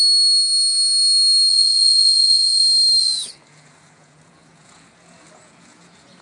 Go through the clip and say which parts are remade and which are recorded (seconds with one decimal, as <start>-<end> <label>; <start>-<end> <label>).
0.0-1.5 recorded; 1.5-2.6 remade; 2.6-3.0 recorded; 3.0-6.2 remade